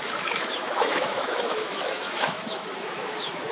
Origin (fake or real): fake